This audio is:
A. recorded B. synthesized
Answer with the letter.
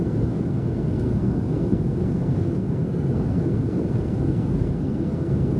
B